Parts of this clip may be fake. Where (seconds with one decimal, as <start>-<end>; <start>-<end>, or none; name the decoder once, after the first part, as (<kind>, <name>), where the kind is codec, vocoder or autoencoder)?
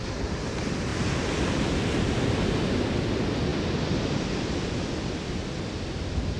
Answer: none